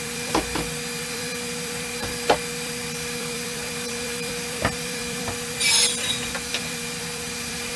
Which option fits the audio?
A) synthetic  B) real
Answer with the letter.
A